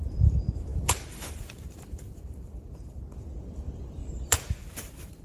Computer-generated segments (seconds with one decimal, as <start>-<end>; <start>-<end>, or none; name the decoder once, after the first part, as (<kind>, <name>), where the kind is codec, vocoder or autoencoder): 0.7-3.0 (vocoder, BigVGAN v2); 4.0-5.2